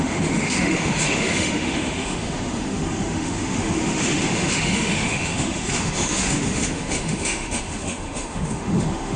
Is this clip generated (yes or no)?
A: yes